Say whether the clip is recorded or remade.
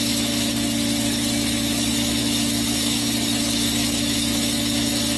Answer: remade